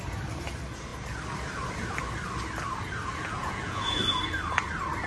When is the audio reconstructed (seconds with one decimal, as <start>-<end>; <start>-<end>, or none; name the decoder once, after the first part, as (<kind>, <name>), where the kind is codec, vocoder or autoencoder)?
3.4-4.2 (vocoder, Vocos)